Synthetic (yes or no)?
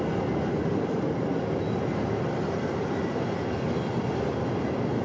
no